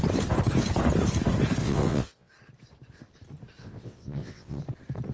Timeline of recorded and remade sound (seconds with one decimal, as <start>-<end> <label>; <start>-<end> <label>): 0.0-1.6 recorded; 1.6-2.3 remade; 2.3-3.6 recorded; 3.6-4.6 remade; 4.6-5.1 recorded